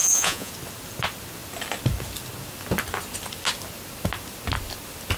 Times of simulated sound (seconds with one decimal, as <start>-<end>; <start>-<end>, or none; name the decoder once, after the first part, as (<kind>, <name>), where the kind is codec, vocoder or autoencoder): 0.0-0.5 (vocoder, Vocos)